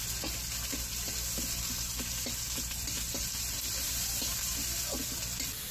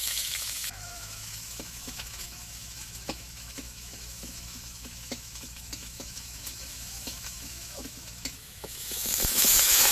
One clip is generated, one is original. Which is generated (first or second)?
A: second